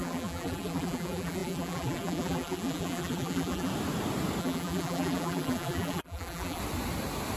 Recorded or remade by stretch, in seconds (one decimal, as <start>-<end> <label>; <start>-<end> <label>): 0.0-3.7 remade; 3.7-4.4 recorded; 4.4-6.6 remade; 6.6-7.4 recorded